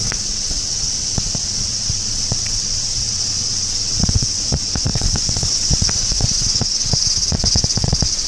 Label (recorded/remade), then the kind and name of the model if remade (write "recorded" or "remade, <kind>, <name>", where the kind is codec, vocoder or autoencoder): remade, vocoder, WaveNeXt